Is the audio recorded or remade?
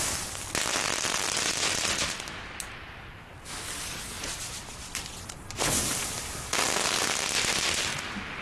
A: recorded